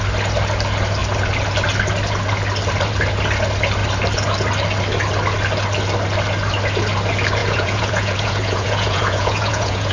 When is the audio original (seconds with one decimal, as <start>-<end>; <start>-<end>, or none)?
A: 0.0-7.4